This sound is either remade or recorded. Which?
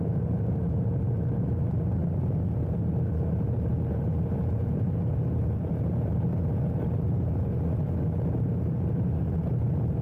remade